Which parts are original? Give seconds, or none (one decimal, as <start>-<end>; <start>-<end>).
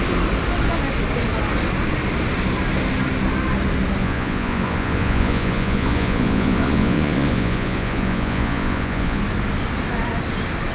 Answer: 0.0-4.0; 9.2-10.7